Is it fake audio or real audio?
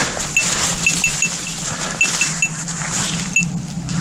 real